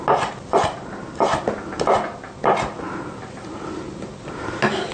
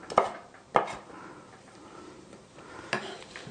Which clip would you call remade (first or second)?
second